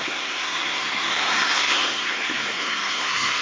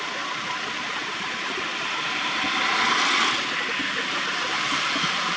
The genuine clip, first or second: second